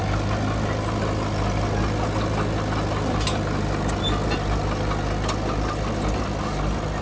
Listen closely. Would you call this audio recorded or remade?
recorded